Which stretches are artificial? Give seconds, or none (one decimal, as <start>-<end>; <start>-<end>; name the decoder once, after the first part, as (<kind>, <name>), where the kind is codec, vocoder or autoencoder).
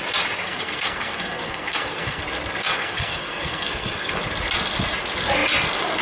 0.4-2.2 (codec, SNAC); 2.6-4.2